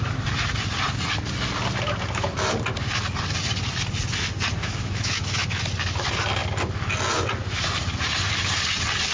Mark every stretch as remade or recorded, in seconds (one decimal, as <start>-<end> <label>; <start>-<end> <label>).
0.0-4.6 recorded; 4.6-5.6 remade; 5.6-9.1 recorded